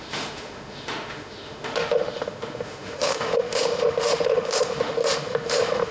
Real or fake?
fake